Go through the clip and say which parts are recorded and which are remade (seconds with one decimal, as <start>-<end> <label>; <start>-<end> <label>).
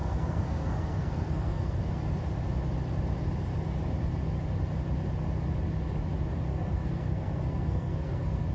0.0-2.0 remade; 2.0-6.5 recorded; 6.5-8.5 remade